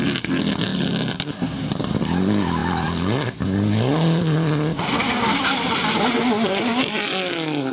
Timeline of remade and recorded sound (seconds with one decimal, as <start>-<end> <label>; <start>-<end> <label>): 0.0-7.7 recorded